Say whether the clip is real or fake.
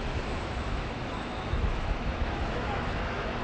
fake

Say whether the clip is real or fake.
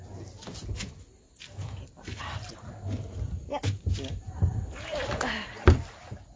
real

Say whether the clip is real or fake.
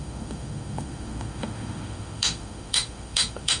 fake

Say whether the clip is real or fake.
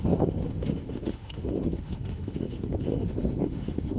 fake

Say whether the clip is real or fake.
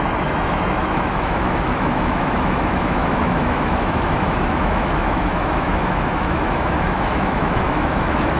fake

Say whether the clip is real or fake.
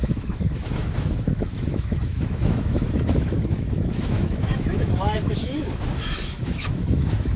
fake